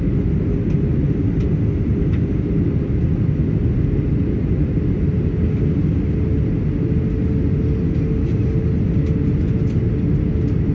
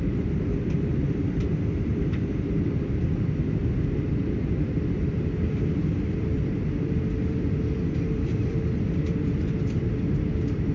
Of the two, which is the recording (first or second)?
first